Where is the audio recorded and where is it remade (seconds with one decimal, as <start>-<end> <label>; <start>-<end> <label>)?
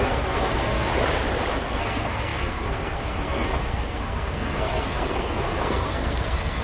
0.0-0.9 remade; 0.9-1.5 recorded; 1.5-6.6 remade